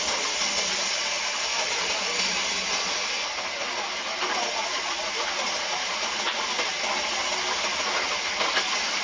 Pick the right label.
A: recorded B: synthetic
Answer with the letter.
A